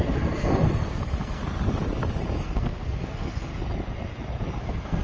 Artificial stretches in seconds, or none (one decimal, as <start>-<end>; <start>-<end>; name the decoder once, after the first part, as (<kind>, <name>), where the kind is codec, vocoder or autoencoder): 0.0-1.4 (codec, SNAC); 2.4-3.5; 4.6-5.0